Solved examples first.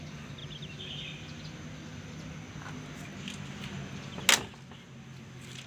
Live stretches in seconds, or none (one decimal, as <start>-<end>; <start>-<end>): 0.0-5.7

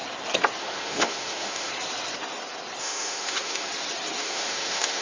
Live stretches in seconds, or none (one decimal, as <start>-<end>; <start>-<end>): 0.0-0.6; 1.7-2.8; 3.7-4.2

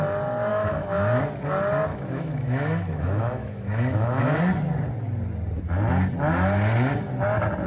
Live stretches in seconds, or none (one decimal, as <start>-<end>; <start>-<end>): 0.0-0.5; 1.2-1.9; 4.4-7.7